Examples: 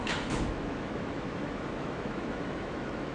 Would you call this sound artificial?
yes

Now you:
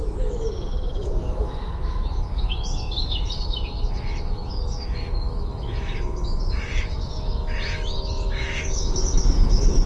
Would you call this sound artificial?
yes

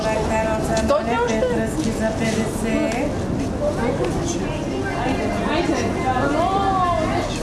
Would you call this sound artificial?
no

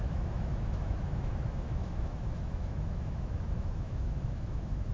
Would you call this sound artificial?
yes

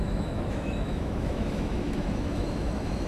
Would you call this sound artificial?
yes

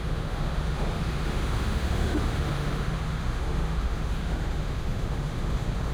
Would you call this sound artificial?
yes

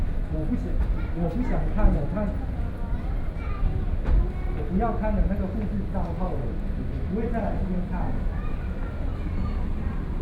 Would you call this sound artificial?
no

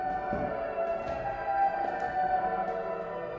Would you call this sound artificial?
no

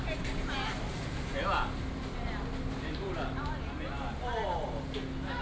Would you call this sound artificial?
no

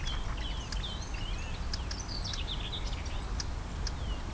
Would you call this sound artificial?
no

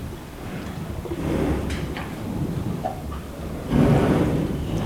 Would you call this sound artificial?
no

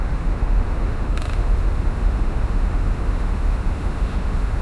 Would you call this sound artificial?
yes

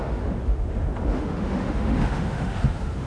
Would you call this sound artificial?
yes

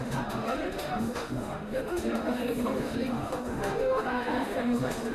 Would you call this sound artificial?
yes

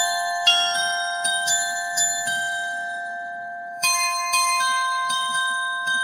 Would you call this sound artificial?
yes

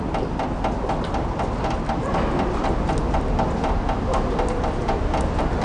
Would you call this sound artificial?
no